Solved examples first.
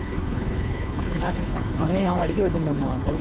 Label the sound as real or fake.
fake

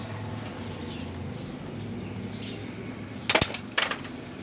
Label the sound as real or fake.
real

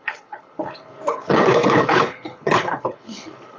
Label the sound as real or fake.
fake